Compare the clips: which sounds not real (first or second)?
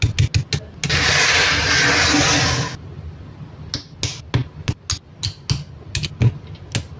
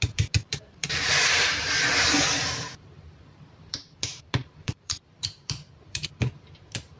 second